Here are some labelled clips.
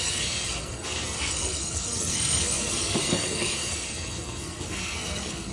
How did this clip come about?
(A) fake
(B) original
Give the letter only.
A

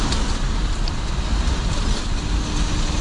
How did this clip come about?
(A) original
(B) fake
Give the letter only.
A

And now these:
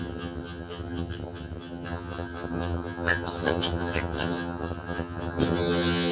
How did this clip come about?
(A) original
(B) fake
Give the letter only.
B